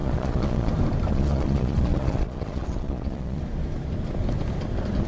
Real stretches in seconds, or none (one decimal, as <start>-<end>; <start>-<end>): 0.7-1.1; 3.4-5.1